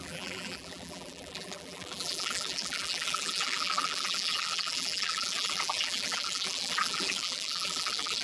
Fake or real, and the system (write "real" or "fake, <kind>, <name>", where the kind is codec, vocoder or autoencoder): fake, vocoder, BigVGAN v2